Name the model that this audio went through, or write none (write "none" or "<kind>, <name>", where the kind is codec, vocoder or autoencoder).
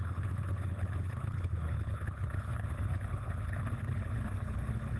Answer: codec, HILCodec